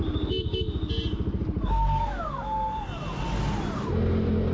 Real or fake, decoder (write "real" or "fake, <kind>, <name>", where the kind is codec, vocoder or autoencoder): real